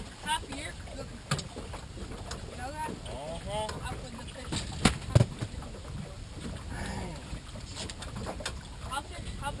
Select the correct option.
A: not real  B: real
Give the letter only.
B